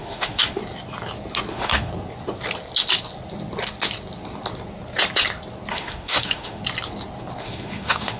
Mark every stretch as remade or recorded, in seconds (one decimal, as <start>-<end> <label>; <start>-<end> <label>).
0.0-0.6 remade; 0.6-1.5 recorded; 1.5-1.9 remade; 1.9-5.7 recorded; 5.7-6.6 remade; 6.6-7.4 recorded; 7.4-8.2 remade